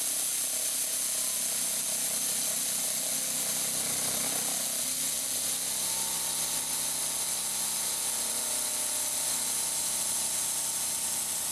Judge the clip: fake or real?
real